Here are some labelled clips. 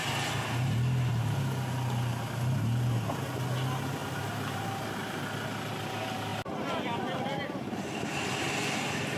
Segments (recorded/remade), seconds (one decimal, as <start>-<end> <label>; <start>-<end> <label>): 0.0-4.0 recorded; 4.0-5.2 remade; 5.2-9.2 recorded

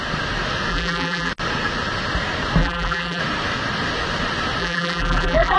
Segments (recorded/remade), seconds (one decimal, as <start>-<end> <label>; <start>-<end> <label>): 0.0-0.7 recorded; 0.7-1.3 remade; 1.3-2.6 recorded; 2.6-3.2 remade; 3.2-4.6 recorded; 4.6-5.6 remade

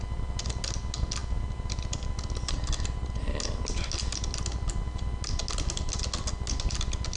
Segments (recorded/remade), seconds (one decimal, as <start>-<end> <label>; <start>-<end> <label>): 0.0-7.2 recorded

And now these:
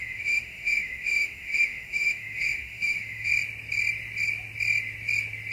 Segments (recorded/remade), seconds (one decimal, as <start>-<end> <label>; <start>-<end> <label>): 0.0-3.3 remade; 3.3-5.5 recorded